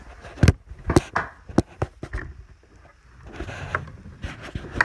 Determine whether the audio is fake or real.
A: real